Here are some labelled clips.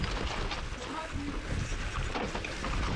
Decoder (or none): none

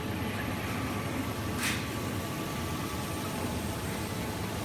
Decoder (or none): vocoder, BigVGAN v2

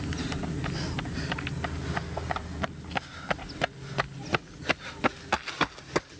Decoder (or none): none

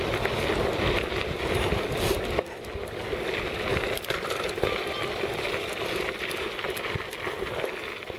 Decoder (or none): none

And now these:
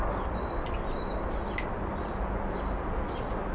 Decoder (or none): none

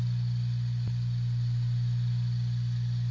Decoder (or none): none